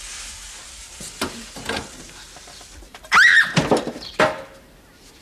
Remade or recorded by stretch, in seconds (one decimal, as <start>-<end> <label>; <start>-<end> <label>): 0.0-2.9 recorded; 2.9-4.1 remade; 4.1-5.2 recorded